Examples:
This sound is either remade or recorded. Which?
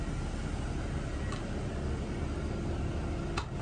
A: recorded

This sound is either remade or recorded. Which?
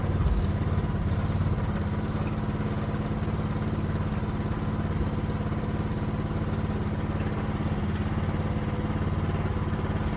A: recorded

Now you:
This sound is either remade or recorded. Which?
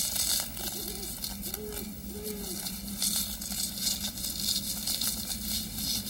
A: recorded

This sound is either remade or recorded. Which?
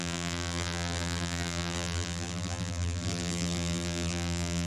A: remade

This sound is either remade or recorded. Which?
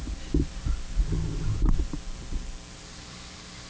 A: remade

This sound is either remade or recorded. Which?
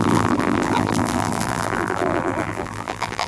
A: remade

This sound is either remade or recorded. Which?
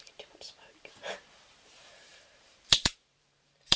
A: remade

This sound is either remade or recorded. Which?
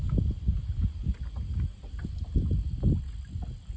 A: recorded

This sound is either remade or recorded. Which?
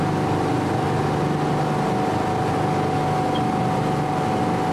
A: recorded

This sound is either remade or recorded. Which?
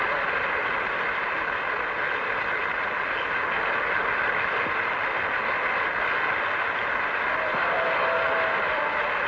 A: recorded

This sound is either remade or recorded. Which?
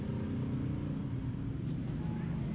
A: recorded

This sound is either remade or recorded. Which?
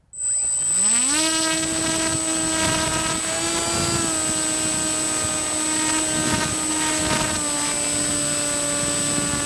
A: recorded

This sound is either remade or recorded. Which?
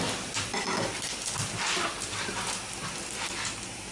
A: remade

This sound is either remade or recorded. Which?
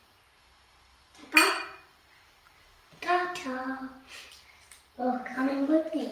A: recorded